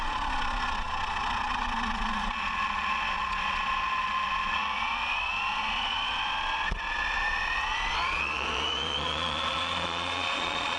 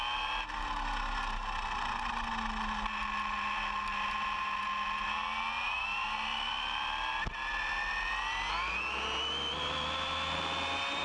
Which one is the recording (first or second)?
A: second